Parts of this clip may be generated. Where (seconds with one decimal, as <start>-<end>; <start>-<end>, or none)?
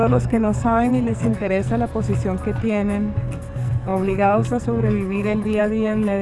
0.0-1.7; 2.6-6.2